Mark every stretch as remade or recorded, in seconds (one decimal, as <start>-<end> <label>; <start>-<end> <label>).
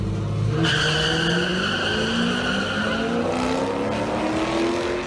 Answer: 0.0-5.1 recorded